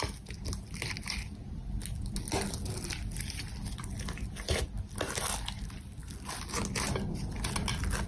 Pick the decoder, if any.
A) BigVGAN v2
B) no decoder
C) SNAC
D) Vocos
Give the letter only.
B